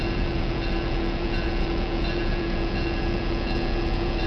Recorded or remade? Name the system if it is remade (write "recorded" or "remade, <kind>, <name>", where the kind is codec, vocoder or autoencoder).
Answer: remade, vocoder, Vocos